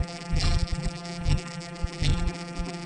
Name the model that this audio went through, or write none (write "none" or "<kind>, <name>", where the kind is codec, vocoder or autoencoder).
vocoder, BigVGAN v2